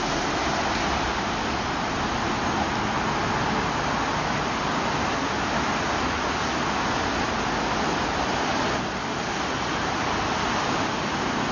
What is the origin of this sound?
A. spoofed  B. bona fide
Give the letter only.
B